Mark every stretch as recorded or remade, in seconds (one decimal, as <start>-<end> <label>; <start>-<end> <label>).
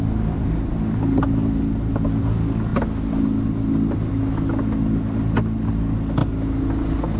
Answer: 0.0-7.2 recorded